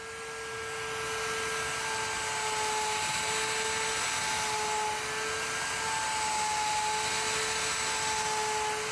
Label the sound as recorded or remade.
recorded